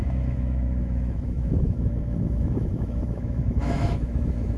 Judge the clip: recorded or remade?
remade